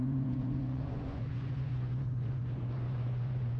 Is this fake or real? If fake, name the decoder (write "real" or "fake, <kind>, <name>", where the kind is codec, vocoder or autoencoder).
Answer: fake, vocoder, Vocos